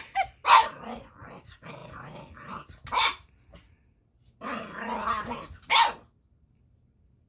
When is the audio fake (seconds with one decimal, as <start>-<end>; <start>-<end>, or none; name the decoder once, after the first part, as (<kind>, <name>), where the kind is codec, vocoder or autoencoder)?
none